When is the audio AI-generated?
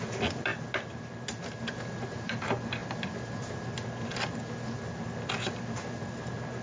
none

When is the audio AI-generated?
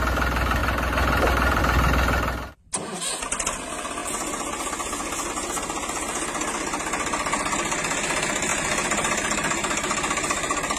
8.5-10.8 (vocoder, BigVGAN v2)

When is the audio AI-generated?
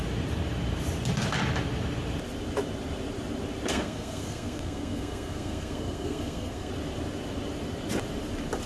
3.7-6.7 (codec, SNAC)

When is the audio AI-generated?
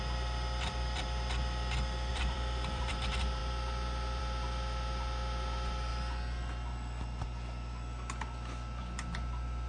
2.1-2.9 (vocoder, BigVGAN v2)